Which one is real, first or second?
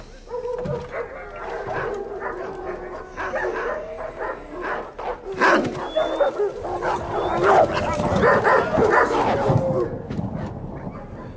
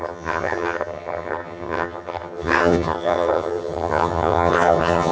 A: first